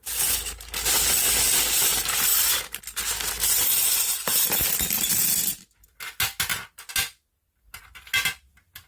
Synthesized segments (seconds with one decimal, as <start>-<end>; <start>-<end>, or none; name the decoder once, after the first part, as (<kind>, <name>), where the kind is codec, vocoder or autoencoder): 2.3-2.8 (vocoder, BigVGAN v2)